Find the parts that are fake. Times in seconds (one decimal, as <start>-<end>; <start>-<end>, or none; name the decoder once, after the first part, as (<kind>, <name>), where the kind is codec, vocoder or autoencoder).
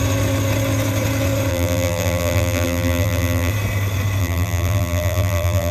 1.5-3.5 (vocoder, BigVGAN v2); 4.2-5.7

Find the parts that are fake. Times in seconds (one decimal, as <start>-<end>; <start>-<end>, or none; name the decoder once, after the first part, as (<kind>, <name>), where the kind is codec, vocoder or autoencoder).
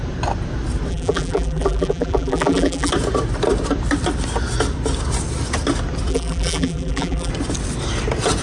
0.9-2.9 (vocoder, BigVGAN v2); 6.1-7.3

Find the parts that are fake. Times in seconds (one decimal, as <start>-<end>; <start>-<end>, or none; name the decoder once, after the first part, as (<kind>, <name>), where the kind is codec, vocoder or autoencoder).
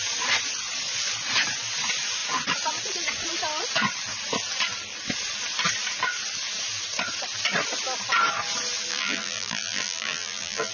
8.9-10.7 (vocoder, BigVGAN v2)